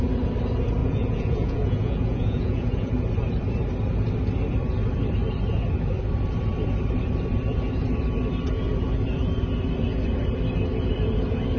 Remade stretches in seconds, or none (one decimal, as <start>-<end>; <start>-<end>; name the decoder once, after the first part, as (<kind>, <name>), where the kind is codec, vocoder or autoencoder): 0.8-2.9 (vocoder, Vocos)